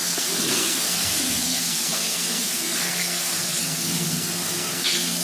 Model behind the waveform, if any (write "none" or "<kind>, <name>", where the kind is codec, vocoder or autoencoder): codec, SNAC